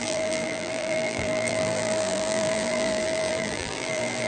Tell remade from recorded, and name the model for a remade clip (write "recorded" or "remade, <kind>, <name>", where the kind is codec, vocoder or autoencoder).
remade, vocoder, BigVGAN v2